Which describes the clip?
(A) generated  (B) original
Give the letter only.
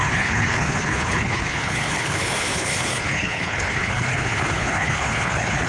A